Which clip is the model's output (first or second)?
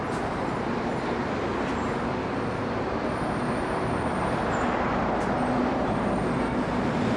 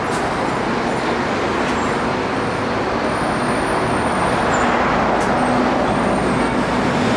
first